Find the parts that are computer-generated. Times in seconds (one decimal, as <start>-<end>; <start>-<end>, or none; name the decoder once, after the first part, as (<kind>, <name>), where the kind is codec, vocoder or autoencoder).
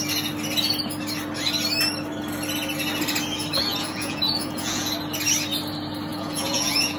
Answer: 3.7-4.9 (vocoder, Vocos); 6.1-7.0